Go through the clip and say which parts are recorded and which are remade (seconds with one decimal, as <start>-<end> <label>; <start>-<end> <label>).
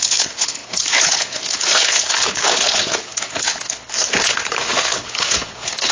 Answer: 0.0-5.9 remade